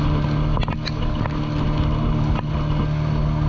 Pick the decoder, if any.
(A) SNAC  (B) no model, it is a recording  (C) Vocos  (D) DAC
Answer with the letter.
B